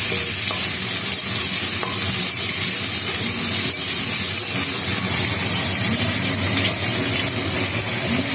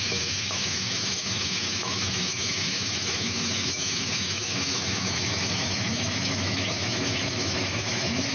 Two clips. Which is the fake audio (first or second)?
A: second